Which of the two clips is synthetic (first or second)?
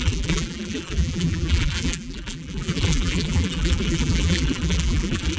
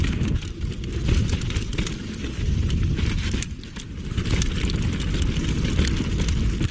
first